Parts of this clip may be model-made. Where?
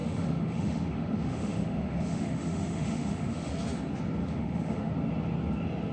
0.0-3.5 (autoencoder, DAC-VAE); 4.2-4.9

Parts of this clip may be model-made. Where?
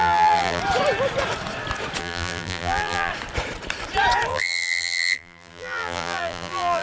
0.0-0.6 (vocoder, BigVGAN v2); 2.0-3.1; 4.3-6.8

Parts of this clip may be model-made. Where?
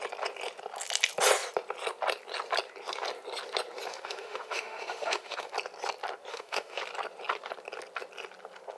3.9-5.5 (autoencoder, DAC-VAE); 6.3-6.8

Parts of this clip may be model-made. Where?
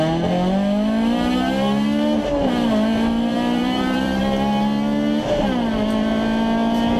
3.3-4.2 (vocoder, BigVGAN v2)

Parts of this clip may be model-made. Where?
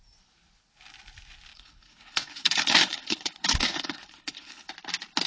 1.5-4.7 (codec, HILCodec)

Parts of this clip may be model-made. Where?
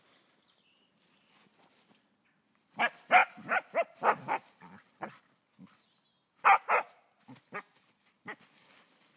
none